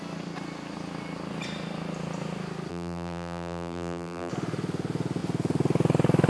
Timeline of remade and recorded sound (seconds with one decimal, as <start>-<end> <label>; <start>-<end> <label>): 0.0-2.7 recorded; 2.7-4.3 remade; 4.3-6.3 recorded